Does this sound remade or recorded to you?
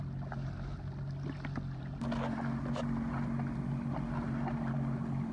recorded